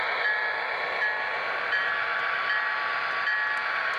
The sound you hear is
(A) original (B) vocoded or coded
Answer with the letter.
A